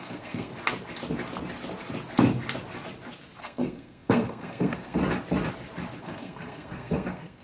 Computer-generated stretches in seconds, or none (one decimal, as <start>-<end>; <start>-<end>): 0.0-0.5; 3.4-5.0; 6.0-7.4